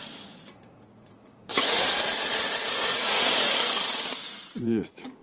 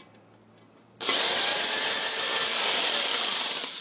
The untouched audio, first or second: second